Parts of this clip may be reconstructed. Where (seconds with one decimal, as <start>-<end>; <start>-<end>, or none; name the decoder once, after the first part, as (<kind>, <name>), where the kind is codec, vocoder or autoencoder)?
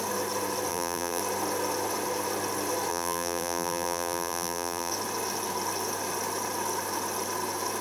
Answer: 0.7-1.2 (vocoder, BigVGAN v2); 2.9-4.9